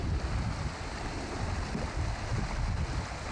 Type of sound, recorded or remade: recorded